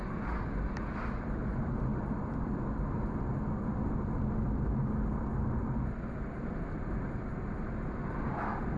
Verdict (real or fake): real